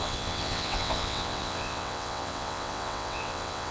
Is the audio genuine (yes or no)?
no